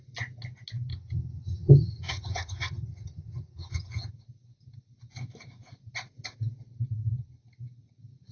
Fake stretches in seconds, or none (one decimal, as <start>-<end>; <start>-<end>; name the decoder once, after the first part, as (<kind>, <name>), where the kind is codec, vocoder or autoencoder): 0.9-4.1 (vocoder, HiFi-GAN)